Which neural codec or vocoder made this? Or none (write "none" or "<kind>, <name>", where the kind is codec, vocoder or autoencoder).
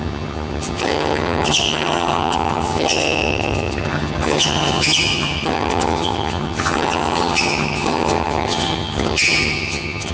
vocoder, HiFi-GAN